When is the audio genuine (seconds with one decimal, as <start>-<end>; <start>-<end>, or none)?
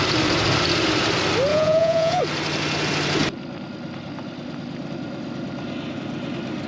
0.0-1.5; 2.2-6.7